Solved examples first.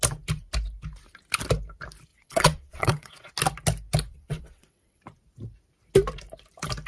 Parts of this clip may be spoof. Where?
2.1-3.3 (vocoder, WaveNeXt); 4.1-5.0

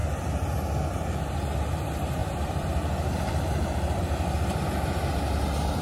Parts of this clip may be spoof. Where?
0.0-5.8 (vocoder, BigVGAN v2)

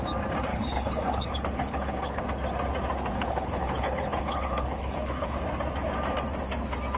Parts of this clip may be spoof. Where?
0.5-2.2 (codec, HILCodec); 3.1-5.4

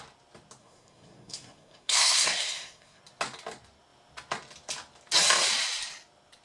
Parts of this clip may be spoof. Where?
0.6-3.0 (codec, SNAC)